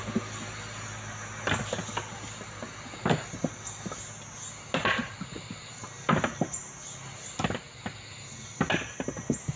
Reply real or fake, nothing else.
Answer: real